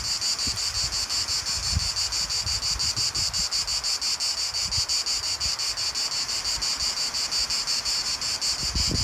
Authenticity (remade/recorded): recorded